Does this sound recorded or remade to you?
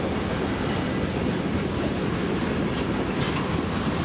recorded